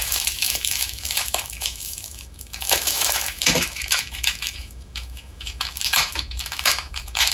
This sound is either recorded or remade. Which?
remade